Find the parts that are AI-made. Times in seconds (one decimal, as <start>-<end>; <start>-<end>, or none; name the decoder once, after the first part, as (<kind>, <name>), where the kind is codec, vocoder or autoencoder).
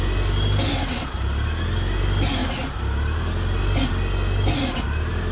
none